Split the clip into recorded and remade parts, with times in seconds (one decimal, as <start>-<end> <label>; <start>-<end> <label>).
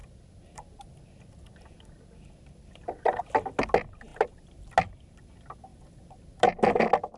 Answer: 0.0-7.2 recorded